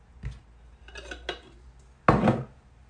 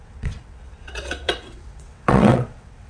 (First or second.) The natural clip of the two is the first